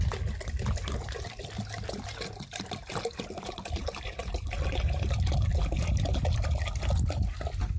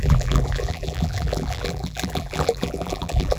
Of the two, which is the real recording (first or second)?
first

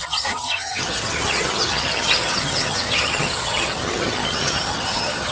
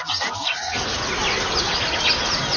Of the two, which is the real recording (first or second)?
second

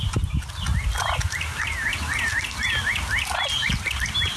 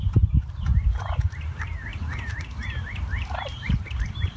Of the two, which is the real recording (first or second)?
first